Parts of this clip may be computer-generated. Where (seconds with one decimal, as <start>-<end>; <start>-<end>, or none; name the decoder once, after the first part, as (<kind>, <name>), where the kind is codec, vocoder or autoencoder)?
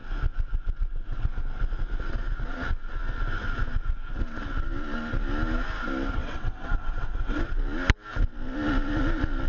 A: 6.2-7.4 (vocoder, WaveNeXt)